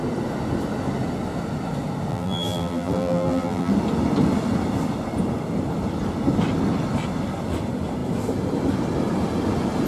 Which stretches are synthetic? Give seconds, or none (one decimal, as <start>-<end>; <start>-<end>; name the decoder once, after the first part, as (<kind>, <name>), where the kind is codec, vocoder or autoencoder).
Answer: 2.1-3.7 (vocoder, BigVGAN v2)